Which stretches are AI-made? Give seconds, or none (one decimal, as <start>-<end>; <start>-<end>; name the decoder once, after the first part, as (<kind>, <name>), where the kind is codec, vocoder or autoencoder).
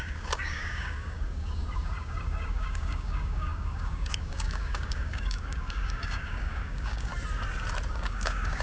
0.0-7.1 (codec, DAC); 7.9-8.6